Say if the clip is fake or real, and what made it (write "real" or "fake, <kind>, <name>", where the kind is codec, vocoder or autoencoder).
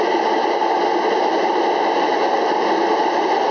real